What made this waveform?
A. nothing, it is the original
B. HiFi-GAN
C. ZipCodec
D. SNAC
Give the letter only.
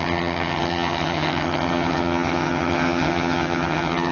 B